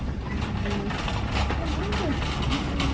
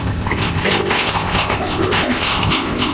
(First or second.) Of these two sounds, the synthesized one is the second